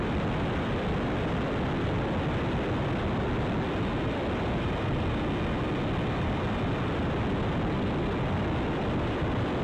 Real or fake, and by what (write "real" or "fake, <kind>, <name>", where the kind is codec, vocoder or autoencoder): real